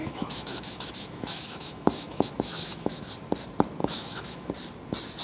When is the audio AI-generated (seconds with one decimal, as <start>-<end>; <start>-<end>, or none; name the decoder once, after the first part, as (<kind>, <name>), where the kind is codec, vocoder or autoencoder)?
0.0-3.1 (autoencoder, DAC-VAE); 3.8-4.5